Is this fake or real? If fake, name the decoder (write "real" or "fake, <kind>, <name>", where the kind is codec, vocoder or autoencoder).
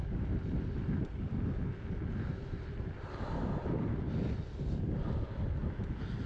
real